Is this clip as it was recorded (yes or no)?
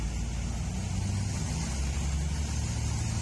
yes